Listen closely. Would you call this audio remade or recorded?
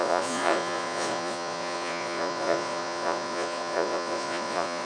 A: remade